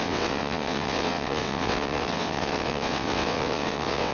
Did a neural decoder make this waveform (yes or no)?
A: yes